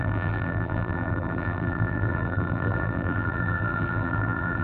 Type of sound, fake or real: fake